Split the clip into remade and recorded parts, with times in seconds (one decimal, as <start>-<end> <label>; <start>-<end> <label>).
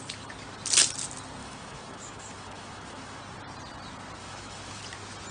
0.0-1.4 recorded; 1.4-3.2 remade; 3.2-4.2 recorded; 4.2-4.8 remade; 4.8-5.3 recorded